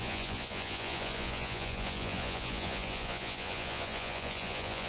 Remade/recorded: remade